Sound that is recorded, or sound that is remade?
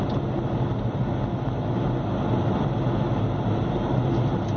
recorded